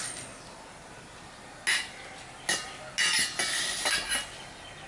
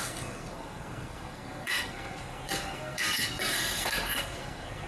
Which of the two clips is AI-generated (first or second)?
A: second